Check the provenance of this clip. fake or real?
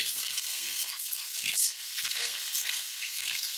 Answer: fake